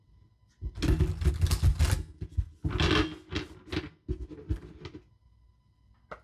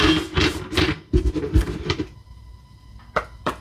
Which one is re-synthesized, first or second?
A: second